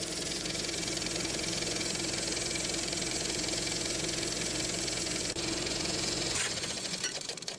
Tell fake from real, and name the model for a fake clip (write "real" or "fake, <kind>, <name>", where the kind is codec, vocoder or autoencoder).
fake, vocoder, Vocos